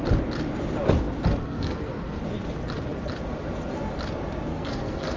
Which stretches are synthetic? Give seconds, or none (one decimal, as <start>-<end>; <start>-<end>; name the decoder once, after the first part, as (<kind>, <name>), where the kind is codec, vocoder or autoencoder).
1.4-2.2 (codec, SNAC); 4.5-5.2